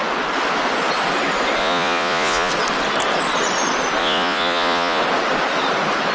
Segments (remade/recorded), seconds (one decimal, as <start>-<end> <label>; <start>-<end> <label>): 0.0-1.6 recorded; 1.6-2.5 remade; 2.5-4.0 recorded; 4.0-5.0 remade; 5.0-6.1 recorded